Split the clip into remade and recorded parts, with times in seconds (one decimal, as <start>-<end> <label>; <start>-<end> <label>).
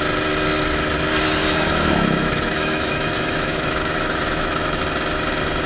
0.0-1.4 recorded; 1.4-4.8 remade; 4.8-5.7 recorded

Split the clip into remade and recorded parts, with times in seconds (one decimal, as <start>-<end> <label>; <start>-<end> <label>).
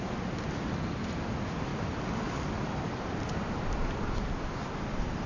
0.0-5.3 recorded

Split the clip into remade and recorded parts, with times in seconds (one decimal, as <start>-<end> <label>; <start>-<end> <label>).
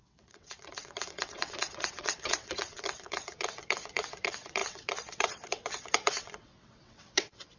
0.0-7.6 remade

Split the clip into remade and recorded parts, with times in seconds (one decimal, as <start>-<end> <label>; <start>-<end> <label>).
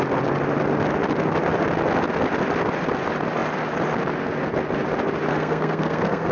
0.0-5.3 recorded; 5.3-6.3 remade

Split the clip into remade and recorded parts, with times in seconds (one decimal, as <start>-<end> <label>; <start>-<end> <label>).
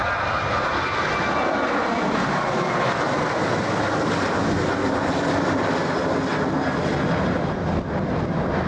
0.0-8.7 recorded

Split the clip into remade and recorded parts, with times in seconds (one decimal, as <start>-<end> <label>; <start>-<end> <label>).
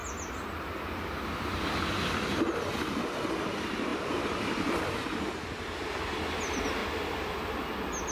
0.0-3.9 recorded; 3.9-4.8 remade; 4.8-6.8 recorded; 6.8-7.3 remade; 7.3-8.1 recorded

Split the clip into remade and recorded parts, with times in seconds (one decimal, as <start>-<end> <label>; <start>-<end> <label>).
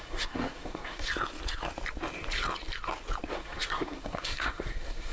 0.0-1.1 remade; 1.1-3.3 recorded; 3.3-5.1 remade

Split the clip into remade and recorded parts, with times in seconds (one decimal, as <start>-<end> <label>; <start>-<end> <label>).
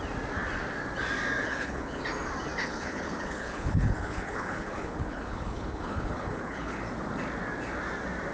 0.0-1.4 recorded; 1.4-2.0 remade; 2.0-2.6 recorded; 2.6-6.8 remade; 6.8-8.3 recorded